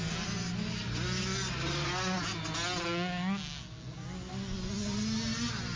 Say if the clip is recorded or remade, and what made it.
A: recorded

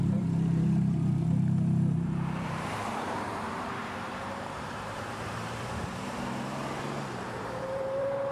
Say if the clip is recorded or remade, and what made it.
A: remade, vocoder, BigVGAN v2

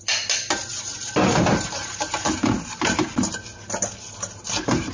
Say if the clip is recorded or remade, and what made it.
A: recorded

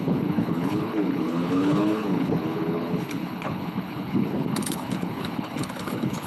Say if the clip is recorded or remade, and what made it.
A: remade, codec, HILCodec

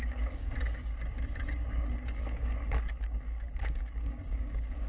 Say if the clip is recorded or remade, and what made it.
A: remade, codec, DAC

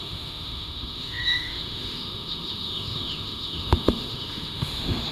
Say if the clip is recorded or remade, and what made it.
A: remade, autoencoder, DAC-VAE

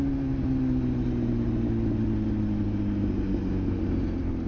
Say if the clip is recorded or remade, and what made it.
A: recorded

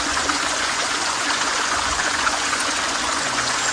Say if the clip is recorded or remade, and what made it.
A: remade, vocoder, Vocos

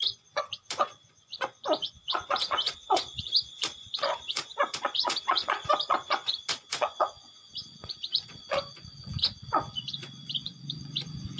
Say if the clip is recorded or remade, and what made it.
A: remade, vocoder, Vocos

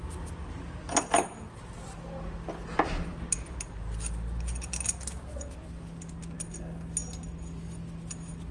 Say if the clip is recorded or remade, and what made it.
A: recorded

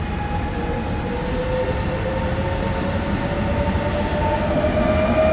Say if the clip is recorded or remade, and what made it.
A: recorded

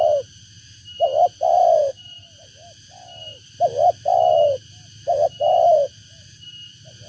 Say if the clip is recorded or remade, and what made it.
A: recorded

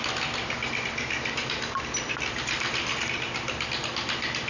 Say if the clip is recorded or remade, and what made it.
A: recorded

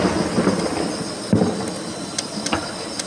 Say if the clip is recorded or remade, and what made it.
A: recorded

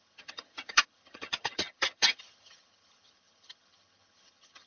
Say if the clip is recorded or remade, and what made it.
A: remade, vocoder, HiFi-GAN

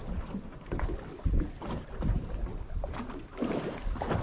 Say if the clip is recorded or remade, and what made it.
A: remade, vocoder, BigVGAN v2